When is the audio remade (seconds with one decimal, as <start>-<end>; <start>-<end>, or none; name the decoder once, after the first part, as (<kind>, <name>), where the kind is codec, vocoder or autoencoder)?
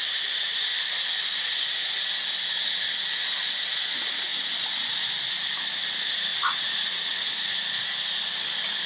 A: 6.3-7.6 (vocoder, Vocos)